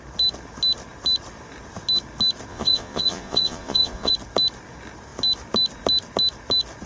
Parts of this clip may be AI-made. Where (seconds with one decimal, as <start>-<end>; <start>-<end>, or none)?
2.5-4.1